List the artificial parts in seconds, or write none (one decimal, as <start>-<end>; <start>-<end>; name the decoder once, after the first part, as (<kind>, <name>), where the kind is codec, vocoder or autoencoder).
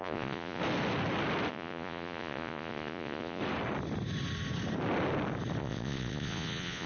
0.0-0.6 (vocoder, Vocos); 1.5-3.4; 5.6-6.9